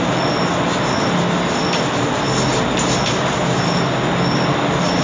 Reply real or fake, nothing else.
real